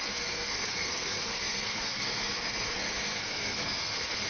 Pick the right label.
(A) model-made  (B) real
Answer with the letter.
A